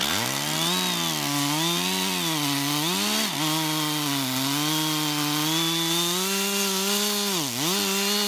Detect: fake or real real